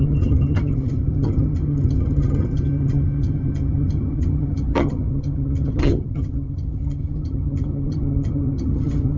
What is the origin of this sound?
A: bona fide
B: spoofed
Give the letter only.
B